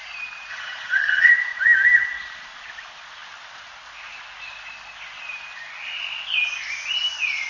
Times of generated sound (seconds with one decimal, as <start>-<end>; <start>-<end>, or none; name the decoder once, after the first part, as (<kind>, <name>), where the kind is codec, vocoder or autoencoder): 0.5-1.3 (vocoder, HiFi-GAN)